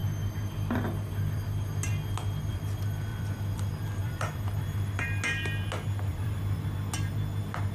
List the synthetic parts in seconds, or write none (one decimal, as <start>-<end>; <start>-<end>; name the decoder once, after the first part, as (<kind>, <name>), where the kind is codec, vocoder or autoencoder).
3.1-4.4 (vocoder, BigVGAN v2); 6.1-6.9